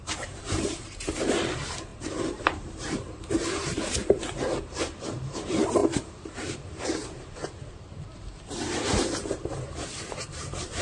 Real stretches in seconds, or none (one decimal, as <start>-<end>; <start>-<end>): none